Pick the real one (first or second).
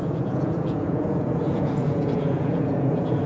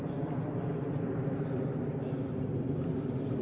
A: second